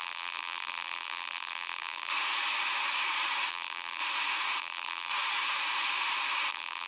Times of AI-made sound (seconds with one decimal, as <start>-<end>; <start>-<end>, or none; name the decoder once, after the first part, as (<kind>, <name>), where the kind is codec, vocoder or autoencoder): 0.0-2.1 (vocoder, BigVGAN v2); 3.5-4.0; 4.6-5.1; 6.5-6.9